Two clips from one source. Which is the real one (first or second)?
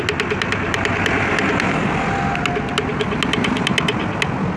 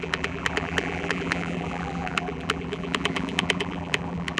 first